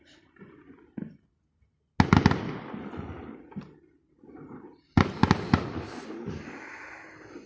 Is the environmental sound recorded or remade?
recorded